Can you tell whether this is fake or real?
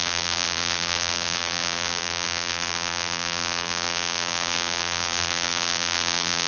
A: fake